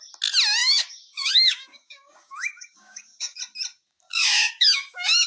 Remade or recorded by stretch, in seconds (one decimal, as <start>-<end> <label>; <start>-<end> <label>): 0.0-0.6 recorded; 0.6-3.4 remade; 3.4-4.1 recorded; 4.1-5.3 remade